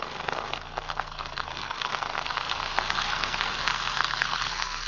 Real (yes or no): no